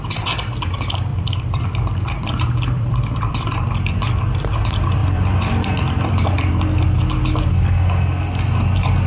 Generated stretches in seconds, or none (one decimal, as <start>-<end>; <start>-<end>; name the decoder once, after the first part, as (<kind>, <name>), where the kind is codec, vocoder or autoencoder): 1.1-4.2 (vocoder, BigVGAN v2); 5.0-6.5